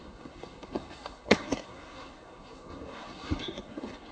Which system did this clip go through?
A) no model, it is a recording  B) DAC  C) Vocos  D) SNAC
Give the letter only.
D